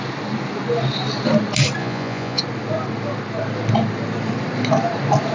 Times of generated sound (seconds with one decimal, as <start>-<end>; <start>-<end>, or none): 1.8-2.4